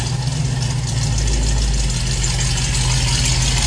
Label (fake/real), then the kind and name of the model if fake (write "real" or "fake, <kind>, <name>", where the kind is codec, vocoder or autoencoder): real